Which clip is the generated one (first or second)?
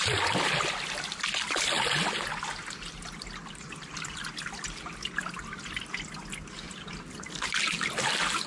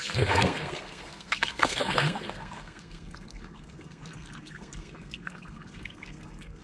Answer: second